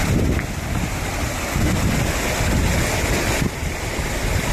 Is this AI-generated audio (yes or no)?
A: no